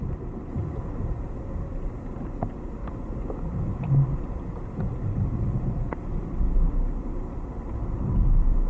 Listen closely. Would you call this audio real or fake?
fake